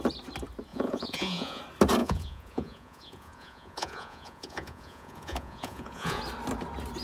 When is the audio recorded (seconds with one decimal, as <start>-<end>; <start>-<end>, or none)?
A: 0.0-0.7; 1.6-2.0; 6.2-7.0